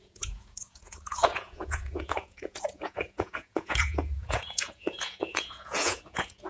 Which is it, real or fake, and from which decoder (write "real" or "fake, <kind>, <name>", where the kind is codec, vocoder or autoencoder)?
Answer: fake, vocoder, Vocos